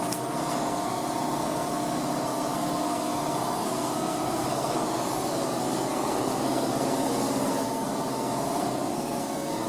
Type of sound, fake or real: fake